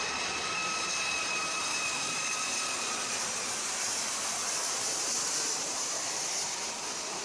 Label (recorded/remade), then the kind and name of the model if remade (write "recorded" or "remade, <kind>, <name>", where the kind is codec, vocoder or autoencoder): remade, vocoder, BigVGAN v2